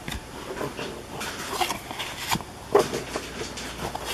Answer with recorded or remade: recorded